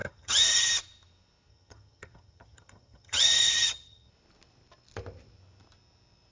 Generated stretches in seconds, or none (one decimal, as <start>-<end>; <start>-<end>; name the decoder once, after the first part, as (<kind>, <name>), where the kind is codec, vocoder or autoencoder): 0.0-0.7 (vocoder, HiFi-GAN); 1.5-4.1